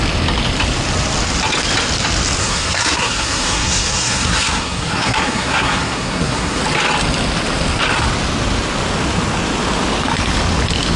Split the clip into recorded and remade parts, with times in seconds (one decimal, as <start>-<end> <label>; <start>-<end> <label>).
0.0-2.4 recorded; 2.4-6.6 remade; 6.6-11.0 recorded